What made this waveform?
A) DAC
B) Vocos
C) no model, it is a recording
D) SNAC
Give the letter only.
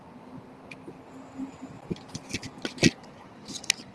C